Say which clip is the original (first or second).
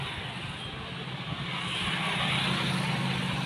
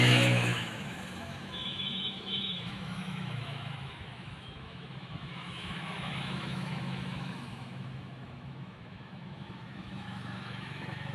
first